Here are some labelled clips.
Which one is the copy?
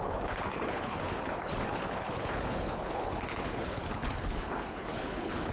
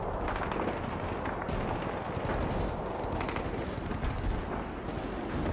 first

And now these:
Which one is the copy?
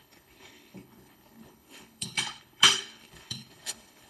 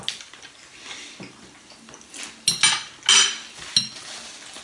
first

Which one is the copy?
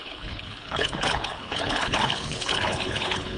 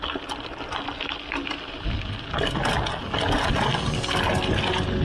first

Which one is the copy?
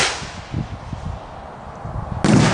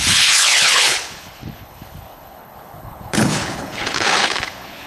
second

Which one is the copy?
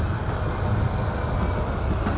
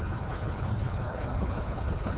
second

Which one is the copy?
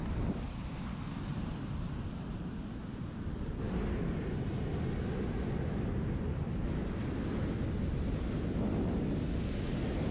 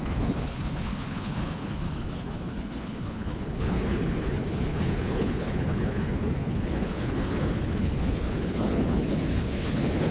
second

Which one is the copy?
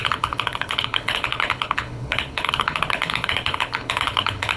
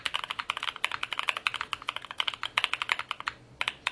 first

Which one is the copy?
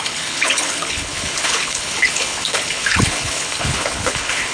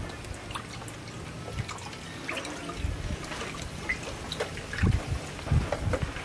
first